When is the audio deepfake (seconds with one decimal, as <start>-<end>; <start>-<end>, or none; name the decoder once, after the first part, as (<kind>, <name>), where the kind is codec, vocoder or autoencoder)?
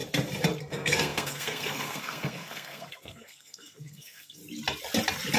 0.6-4.4 (codec, SNAC)